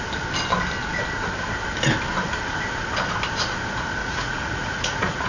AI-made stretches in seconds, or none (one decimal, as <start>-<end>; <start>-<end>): 4.0-5.3